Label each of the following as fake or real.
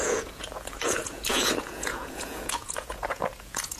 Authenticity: fake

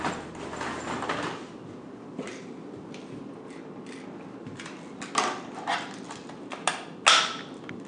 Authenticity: real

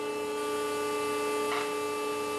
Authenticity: real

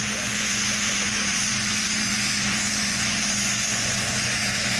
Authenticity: fake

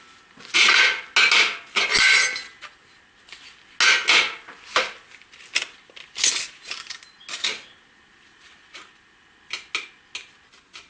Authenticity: real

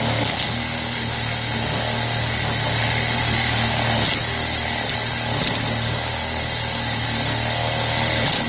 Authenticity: real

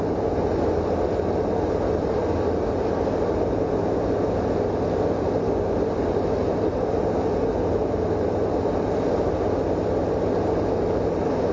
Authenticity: real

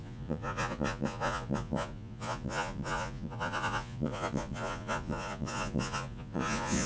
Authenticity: fake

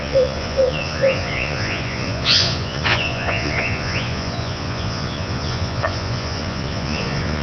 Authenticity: fake